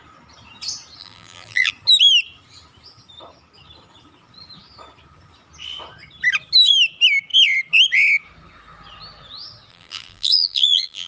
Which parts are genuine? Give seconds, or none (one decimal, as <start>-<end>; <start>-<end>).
0.0-1.0; 1.7-9.7